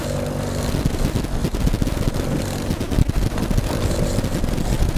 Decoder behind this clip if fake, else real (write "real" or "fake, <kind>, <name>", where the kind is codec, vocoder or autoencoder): real